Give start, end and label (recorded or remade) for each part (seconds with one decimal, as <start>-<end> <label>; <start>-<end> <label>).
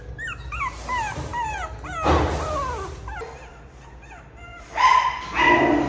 0.0-4.5 recorded; 4.5-5.2 remade; 5.2-5.9 recorded